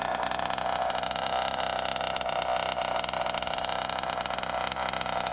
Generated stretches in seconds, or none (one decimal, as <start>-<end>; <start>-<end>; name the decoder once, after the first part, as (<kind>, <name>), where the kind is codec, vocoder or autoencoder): none